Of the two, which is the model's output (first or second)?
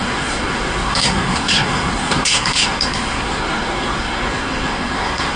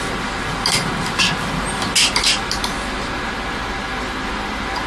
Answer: first